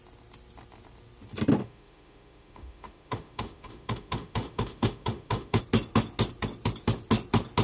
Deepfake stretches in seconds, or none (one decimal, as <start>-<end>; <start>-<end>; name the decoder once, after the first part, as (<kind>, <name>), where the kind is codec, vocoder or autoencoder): 1.6-5.6 (autoencoder, DAC-VAE)